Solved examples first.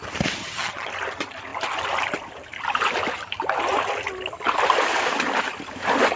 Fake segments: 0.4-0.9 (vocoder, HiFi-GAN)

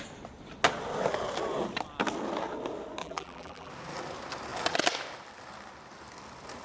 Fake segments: 3.0-3.7 (vocoder, BigVGAN v2)